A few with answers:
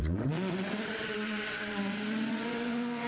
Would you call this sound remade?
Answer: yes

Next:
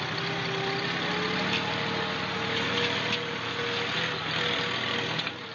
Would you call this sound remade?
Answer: no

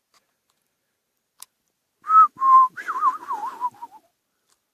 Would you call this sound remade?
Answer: no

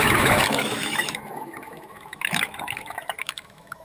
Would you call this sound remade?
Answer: yes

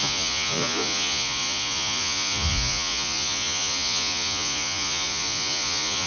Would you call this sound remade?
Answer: yes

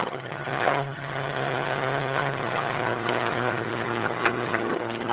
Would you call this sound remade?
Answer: yes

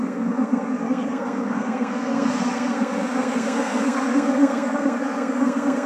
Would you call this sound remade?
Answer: yes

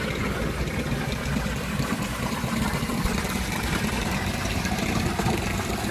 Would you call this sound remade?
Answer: no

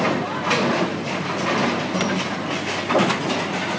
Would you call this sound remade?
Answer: no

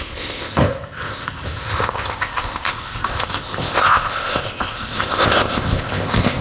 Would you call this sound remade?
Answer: yes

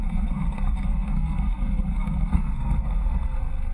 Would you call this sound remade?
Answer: yes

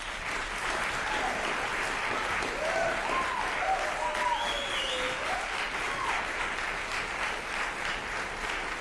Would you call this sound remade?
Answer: no